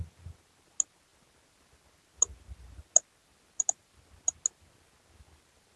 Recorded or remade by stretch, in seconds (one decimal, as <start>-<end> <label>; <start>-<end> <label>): 0.0-5.8 recorded